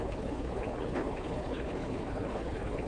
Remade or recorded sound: remade